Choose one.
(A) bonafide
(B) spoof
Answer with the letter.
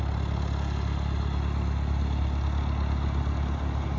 A